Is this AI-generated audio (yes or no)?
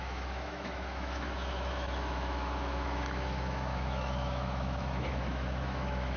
yes